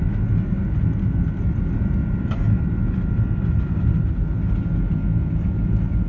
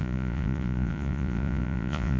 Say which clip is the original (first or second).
first